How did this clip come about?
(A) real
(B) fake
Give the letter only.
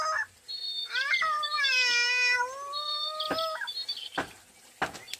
A